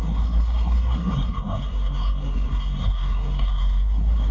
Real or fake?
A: fake